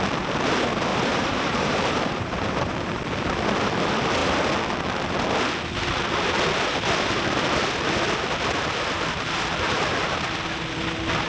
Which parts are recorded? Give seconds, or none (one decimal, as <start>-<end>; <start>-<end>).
0.0-0.9; 2.7-11.3